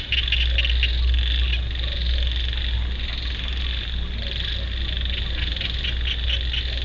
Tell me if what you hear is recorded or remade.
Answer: recorded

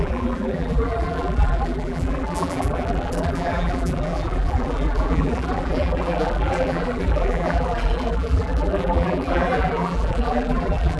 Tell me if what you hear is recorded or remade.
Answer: remade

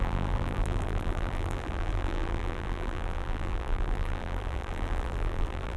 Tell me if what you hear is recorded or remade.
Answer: remade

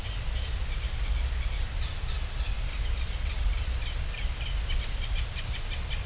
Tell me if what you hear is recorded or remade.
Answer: recorded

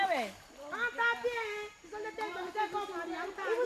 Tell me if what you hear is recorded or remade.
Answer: recorded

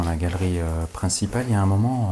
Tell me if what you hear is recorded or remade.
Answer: recorded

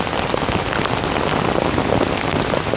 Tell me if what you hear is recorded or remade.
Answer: recorded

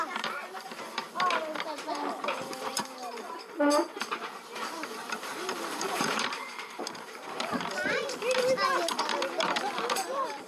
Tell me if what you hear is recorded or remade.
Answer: remade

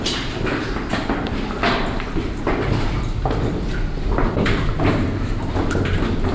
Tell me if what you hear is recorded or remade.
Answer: recorded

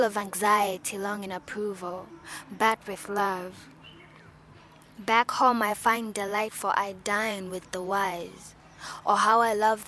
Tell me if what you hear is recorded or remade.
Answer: remade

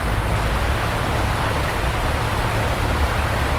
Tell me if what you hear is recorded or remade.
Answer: recorded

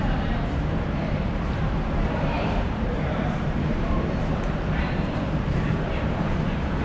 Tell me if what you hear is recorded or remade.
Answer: remade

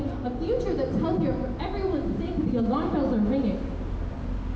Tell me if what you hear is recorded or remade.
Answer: recorded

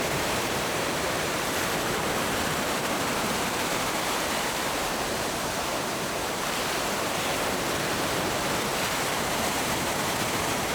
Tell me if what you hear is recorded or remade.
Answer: remade